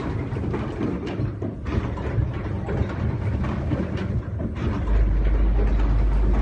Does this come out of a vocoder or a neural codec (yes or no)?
no